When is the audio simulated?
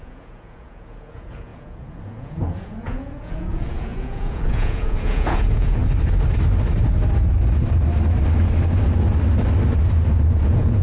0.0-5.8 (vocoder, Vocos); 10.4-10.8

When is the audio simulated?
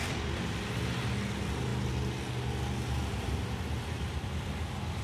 none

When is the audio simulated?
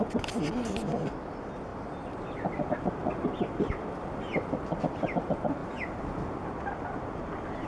1.7-2.7 (vocoder, BigVGAN v2); 5.6-6.5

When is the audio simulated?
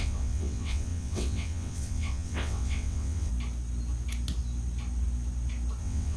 0.0-3.3 (vocoder, WaveNeXt); 5.8-6.2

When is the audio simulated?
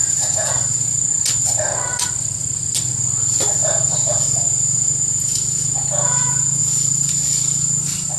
0.0-0.5 (vocoder, Vocos); 3.6-6.6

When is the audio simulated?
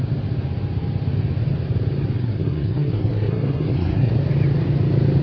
2.2-4.1 (codec, SNAC)